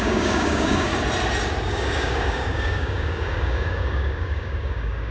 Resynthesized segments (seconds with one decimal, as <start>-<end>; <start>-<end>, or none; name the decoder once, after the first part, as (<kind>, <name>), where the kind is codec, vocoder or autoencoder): 0.0-0.9 (codec, DAC); 1.7-5.1